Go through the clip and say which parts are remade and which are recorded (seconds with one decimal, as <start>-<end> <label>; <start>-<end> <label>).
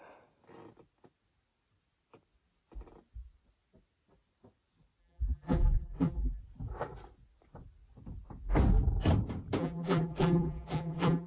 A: 0.0-5.0 recorded; 5.0-6.4 remade; 6.4-9.6 recorded; 9.6-11.3 remade